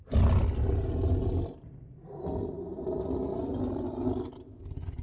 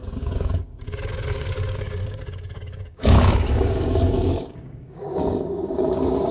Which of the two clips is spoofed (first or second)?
second